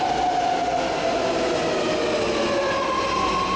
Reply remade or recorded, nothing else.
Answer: recorded